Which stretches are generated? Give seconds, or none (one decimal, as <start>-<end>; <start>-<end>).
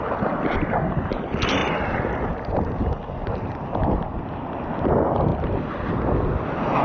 none